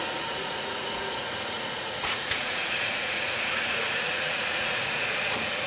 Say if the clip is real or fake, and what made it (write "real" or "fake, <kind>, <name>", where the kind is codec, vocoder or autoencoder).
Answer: fake, vocoder, Vocos